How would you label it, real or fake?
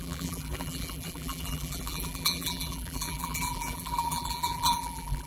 fake